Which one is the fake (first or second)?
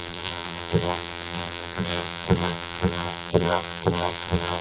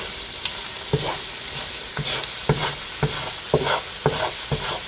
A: first